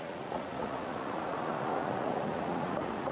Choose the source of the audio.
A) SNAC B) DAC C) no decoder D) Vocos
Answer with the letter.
D